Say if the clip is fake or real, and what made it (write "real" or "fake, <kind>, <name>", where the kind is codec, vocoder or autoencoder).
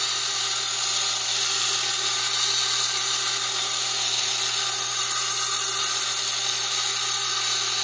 real